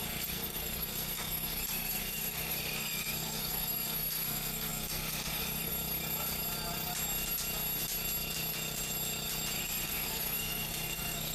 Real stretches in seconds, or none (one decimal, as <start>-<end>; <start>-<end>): 5.7-9.6